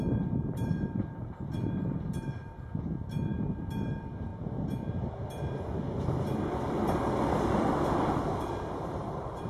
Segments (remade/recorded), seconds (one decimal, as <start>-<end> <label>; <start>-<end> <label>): 0.0-4.3 remade; 4.3-8.4 recorded; 8.4-9.5 remade